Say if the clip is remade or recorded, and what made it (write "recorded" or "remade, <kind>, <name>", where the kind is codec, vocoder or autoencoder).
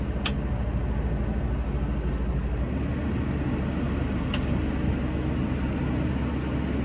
recorded